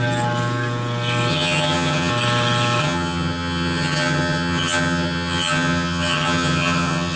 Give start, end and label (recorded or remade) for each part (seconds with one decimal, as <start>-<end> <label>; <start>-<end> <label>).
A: 0.0-1.3 recorded; 1.3-2.1 remade; 2.1-2.8 recorded; 2.8-7.2 remade